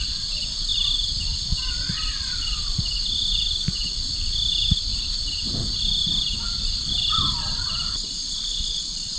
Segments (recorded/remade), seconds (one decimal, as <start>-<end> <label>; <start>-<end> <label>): 0.0-0.7 remade; 0.7-1.9 recorded; 1.9-4.9 remade; 4.9-5.5 recorded; 5.5-9.2 remade